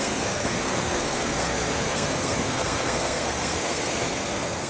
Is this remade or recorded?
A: remade